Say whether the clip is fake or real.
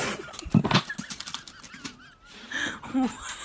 real